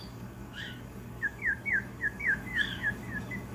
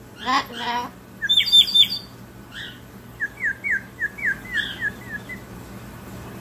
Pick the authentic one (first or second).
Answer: second